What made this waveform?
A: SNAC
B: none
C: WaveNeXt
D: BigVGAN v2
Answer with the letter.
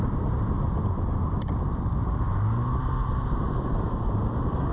B